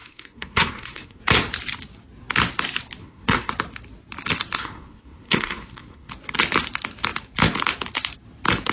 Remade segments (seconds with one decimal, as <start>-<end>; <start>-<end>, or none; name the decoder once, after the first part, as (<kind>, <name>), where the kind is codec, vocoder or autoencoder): 0.0-1.2 (codec, SNAC); 3.0-3.5; 4.6-6.1